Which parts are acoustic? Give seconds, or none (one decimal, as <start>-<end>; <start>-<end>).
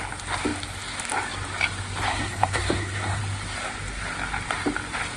0.0-2.1; 3.2-5.2